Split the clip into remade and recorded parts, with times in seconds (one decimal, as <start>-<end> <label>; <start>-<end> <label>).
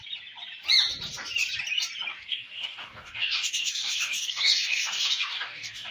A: 0.0-2.1 recorded; 2.1-5.9 remade